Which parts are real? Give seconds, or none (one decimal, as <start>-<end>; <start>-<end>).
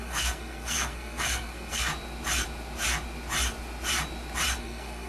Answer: 1.9-4.6